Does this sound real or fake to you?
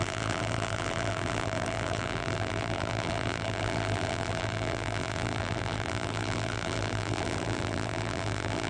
fake